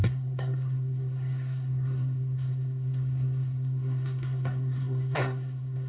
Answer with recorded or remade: remade